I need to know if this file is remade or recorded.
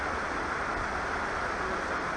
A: recorded